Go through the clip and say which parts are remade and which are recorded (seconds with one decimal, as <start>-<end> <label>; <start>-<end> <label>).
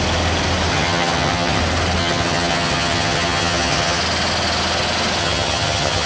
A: 0.0-0.7 recorded; 0.7-1.6 remade; 1.6-2.0 recorded; 2.0-4.0 remade; 4.0-5.2 recorded; 5.2-6.1 remade